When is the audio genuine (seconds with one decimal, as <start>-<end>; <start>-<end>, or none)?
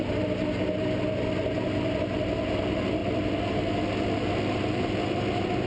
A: 0.0-5.7